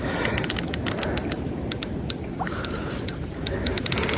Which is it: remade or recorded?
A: recorded